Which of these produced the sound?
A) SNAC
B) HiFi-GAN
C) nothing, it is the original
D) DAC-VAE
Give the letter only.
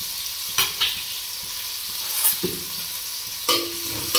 C